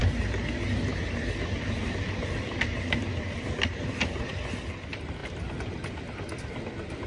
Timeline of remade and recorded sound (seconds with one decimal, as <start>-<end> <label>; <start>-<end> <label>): 0.0-7.1 recorded